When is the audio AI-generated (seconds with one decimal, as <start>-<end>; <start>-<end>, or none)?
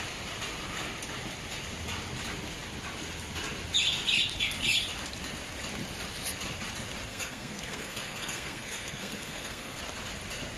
7.1-9.8